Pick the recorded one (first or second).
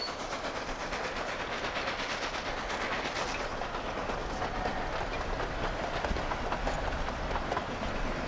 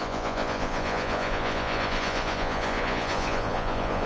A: first